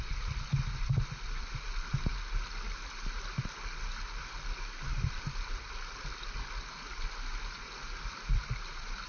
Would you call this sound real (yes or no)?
yes